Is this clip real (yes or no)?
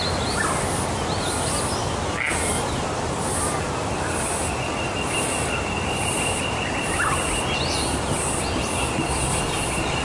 yes